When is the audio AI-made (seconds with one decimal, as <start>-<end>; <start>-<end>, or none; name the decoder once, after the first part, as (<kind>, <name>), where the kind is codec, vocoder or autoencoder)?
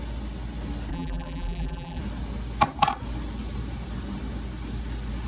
0.9-2.0 (vocoder, BigVGAN v2)